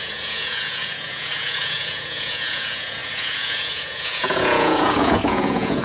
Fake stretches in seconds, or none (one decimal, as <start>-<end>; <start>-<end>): 0.0-5.8